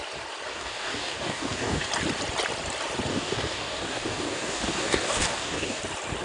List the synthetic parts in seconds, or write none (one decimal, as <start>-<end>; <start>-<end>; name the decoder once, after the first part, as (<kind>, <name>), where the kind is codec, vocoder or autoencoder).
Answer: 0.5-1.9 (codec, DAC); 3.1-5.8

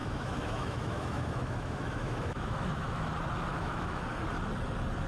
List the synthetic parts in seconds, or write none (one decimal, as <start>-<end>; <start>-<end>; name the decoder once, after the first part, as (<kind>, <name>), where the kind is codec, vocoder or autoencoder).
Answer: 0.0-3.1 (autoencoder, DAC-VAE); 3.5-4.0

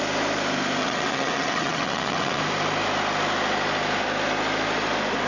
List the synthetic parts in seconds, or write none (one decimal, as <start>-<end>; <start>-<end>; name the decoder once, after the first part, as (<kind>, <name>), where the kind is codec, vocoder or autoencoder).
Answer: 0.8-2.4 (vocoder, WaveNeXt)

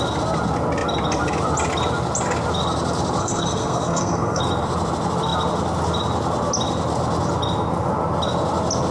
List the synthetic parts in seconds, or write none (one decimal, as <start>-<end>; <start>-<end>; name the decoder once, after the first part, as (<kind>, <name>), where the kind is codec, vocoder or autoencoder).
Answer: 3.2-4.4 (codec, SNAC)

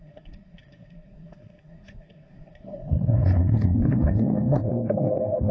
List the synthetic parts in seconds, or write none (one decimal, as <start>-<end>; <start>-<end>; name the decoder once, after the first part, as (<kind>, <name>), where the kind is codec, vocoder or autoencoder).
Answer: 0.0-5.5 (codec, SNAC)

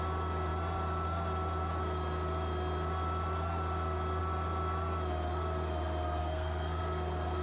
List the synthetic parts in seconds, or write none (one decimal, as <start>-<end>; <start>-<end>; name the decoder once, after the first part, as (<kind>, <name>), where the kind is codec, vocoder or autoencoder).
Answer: 6.2-6.8 (codec, SNAC)

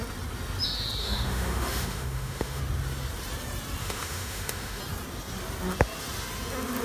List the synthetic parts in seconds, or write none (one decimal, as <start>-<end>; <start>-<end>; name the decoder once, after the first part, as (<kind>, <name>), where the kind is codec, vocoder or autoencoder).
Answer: 1.0-2.6 (autoencoder, DAC-VAE); 3.8-4.8